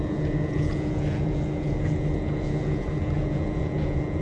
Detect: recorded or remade remade